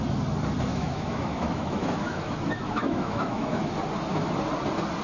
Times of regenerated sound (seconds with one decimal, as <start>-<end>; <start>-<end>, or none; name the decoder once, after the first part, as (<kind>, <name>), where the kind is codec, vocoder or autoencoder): 0.7-3.7 (autoencoder, DAC-VAE)